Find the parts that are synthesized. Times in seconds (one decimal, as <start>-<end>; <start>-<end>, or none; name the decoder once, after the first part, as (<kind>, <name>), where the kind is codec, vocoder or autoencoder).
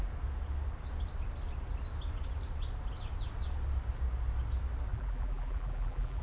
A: 4.9-6.2 (vocoder, BigVGAN v2)